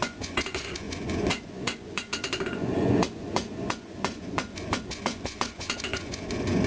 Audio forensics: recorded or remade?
remade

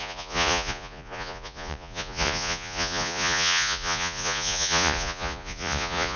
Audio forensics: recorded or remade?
remade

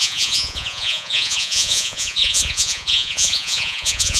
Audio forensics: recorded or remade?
remade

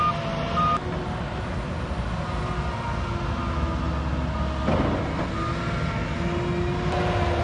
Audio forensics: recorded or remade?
recorded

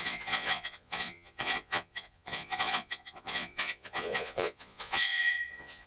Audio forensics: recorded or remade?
remade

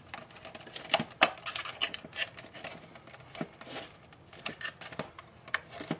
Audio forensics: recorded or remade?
recorded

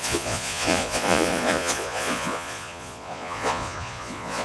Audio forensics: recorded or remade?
remade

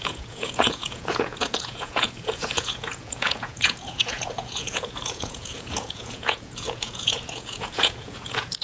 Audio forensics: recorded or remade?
remade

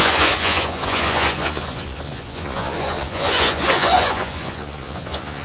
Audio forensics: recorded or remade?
remade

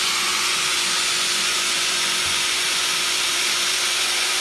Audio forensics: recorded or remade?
remade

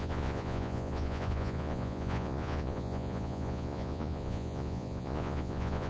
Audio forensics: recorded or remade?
remade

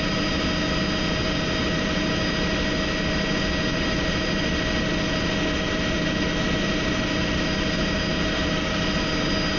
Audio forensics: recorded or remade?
recorded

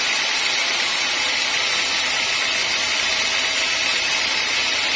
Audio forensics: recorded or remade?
recorded